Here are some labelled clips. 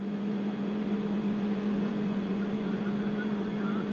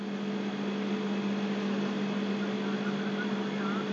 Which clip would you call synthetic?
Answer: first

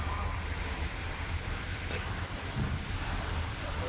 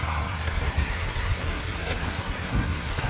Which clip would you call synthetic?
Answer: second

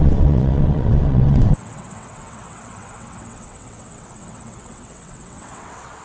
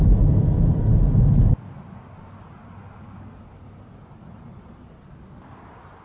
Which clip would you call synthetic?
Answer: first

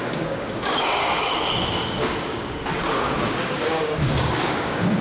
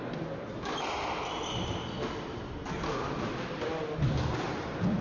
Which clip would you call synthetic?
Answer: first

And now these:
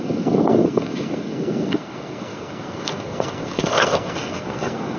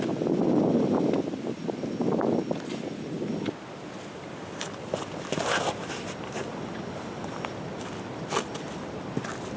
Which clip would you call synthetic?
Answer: first